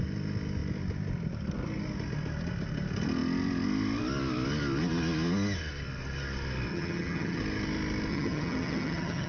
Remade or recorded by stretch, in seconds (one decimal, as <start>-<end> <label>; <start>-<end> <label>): 0.0-6.7 recorded; 6.7-7.4 remade; 7.4-8.1 recorded; 8.1-9.3 remade